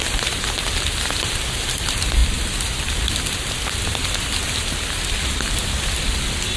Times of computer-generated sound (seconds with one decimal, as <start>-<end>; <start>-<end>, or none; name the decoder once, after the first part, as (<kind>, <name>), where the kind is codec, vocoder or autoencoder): none